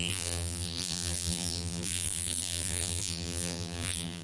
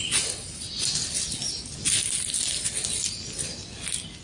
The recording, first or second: second